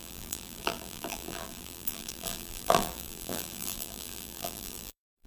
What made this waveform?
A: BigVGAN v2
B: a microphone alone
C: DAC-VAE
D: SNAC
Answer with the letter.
A